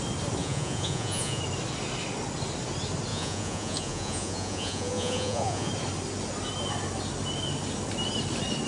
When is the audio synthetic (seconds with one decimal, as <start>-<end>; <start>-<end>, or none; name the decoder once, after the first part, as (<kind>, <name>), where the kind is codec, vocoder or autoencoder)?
0.4-1.4 (vocoder, Vocos); 3.1-5.7